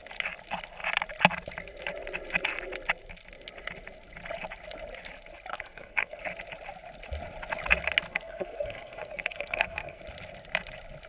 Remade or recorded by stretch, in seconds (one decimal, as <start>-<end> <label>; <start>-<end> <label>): 0.0-5.5 recorded; 5.5-6.2 remade; 6.2-8.1 recorded; 8.1-10.0 remade; 10.0-11.1 recorded